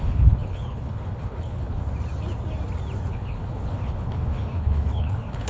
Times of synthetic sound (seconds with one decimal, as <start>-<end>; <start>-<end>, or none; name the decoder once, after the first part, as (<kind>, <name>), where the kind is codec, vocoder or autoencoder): 0.0-1.8 (codec, HILCodec); 3.1-5.5